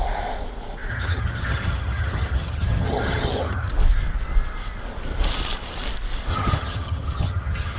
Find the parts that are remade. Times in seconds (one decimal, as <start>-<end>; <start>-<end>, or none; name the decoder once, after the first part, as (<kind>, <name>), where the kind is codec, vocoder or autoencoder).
0.9-3.7 (vocoder, HiFi-GAN); 6.3-7.8